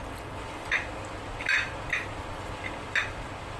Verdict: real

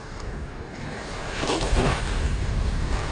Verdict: fake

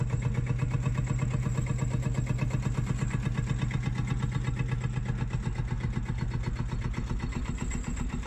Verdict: real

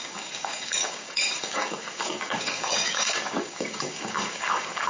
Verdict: fake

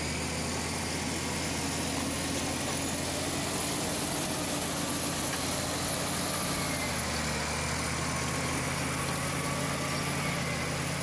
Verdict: real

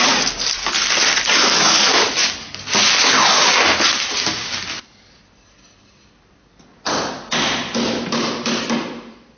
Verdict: real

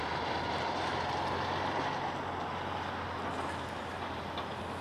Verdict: real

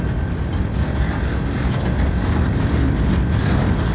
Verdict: real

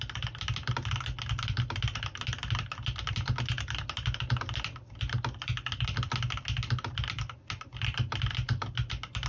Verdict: real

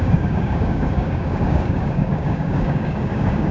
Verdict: fake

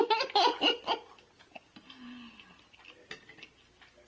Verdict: real